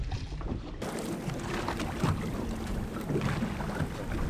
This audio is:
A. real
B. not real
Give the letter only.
A